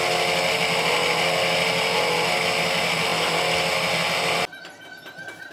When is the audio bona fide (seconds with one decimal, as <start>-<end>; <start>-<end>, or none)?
0.0-5.5